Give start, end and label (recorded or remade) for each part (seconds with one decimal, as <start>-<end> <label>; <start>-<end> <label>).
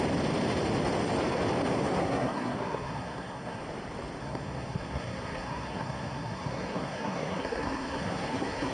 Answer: 0.0-2.0 recorded; 2.0-3.6 remade; 3.6-4.2 recorded; 4.2-8.7 remade